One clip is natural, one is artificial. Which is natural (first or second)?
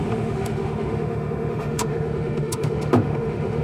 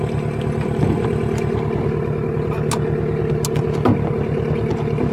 second